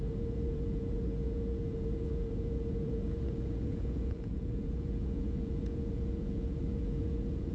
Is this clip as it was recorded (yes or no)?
no